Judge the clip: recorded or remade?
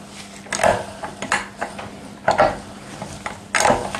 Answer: recorded